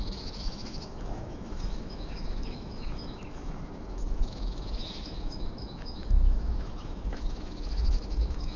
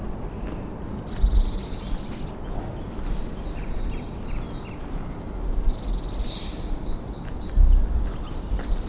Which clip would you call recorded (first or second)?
second